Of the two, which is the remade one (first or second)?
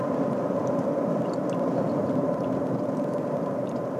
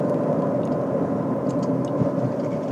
first